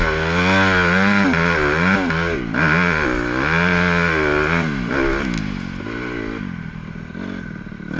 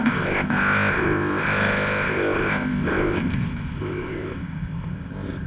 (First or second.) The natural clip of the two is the first